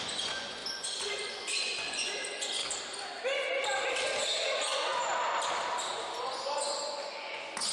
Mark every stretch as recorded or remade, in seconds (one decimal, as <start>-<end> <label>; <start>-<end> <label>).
0.0-2.6 remade; 2.6-4.6 recorded; 4.6-5.1 remade; 5.1-5.9 recorded; 5.9-7.7 remade